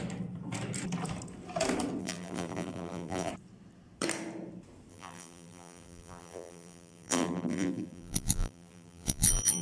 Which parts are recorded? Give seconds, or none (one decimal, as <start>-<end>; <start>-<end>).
0.0-2.0; 3.3-4.9

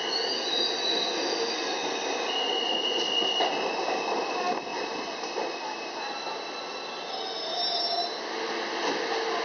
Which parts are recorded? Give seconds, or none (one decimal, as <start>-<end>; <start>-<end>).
0.0-9.4